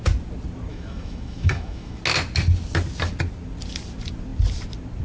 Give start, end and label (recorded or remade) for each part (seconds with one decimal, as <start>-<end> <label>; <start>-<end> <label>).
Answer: 0.0-0.7 recorded; 0.7-2.0 remade; 2.0-5.0 recorded